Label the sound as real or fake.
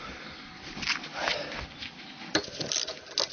real